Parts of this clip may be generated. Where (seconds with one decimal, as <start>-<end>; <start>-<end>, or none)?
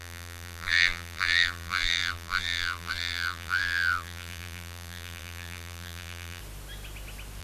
0.0-6.4